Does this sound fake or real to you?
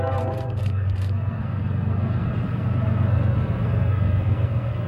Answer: fake